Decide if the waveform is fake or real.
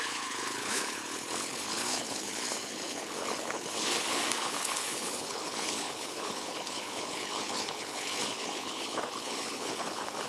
fake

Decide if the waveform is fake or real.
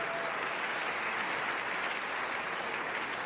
real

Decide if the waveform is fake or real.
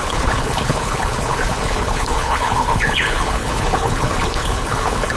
fake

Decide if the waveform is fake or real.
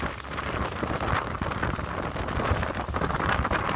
real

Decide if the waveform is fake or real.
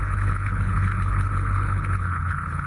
fake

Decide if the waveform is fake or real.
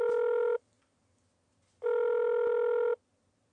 real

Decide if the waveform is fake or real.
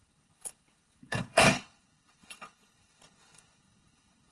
fake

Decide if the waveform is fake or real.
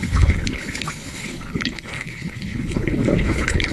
fake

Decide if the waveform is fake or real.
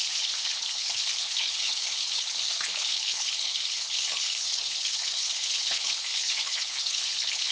fake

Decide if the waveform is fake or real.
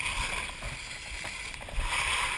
real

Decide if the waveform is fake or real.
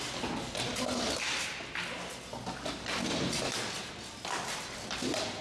real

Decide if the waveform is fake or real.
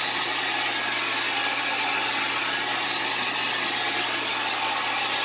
real